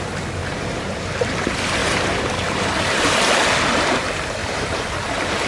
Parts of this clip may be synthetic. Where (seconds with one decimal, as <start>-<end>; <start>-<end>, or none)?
0.4-1.0; 1.8-3.3; 4.4-5.1